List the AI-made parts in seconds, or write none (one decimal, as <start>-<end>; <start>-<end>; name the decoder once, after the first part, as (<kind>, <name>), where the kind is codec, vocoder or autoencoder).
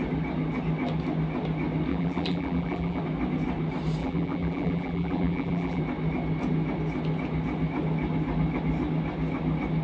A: 1.9-3.0 (vocoder, BigVGAN v2); 4.0-5.8